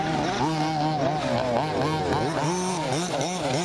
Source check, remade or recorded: recorded